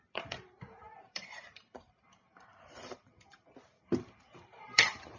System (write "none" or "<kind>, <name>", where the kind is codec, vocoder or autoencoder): vocoder, BigVGAN v2